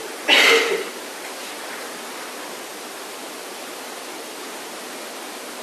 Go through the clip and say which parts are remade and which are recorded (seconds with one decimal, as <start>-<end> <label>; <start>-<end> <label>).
0.0-5.6 recorded